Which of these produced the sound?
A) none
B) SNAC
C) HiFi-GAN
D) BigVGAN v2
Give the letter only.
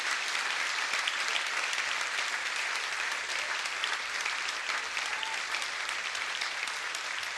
D